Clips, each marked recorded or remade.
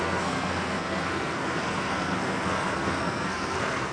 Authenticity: remade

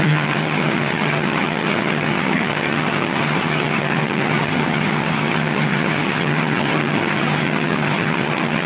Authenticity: remade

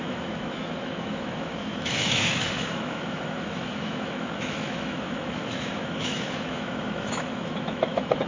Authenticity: remade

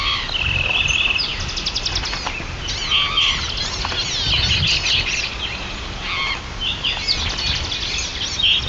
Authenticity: recorded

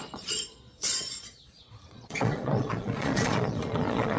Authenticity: remade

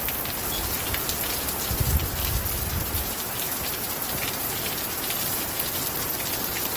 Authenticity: recorded